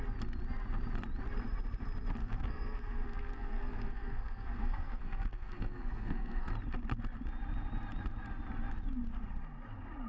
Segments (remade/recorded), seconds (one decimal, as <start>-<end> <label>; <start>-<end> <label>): 0.0-2.2 recorded; 2.2-6.5 remade; 6.5-10.1 recorded